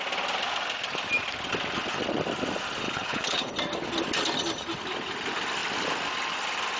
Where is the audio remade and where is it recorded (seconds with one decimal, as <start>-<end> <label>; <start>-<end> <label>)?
0.0-2.8 recorded; 2.8-3.5 remade; 3.5-6.8 recorded